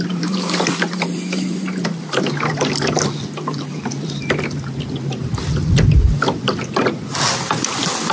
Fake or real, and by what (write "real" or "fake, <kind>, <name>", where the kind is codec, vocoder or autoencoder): real